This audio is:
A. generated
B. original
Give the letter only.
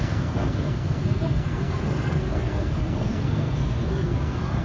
A